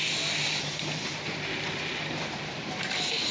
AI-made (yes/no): no